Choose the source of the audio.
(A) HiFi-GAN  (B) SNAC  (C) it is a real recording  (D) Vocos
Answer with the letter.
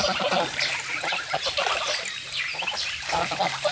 C